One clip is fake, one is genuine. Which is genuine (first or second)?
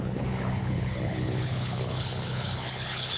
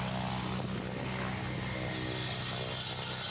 second